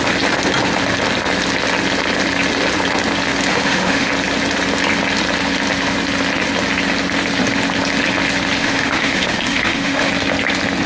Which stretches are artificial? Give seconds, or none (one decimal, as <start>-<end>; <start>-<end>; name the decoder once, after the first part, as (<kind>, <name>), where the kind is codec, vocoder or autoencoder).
3.5-4.1 (autoencoder, DAC-VAE); 8.6-10.1